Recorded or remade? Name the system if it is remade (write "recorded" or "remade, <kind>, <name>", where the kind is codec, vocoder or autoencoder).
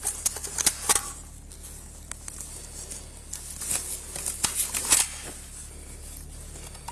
recorded